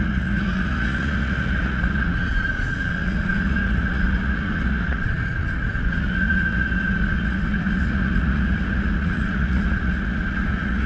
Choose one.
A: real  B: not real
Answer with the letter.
B